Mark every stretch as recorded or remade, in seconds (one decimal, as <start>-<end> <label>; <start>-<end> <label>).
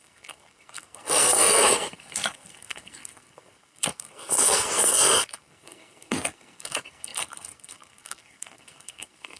0.0-9.4 remade